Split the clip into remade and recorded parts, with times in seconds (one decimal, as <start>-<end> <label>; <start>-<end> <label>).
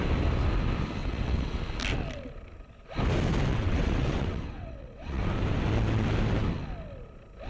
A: 0.0-1.0 recorded; 1.0-1.6 remade; 1.6-3.5 recorded; 3.5-5.2 remade; 5.2-7.5 recorded